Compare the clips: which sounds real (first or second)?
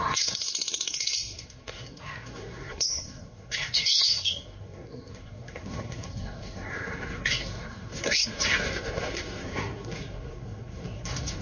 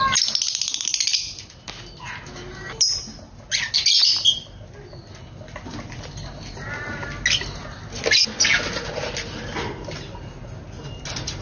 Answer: second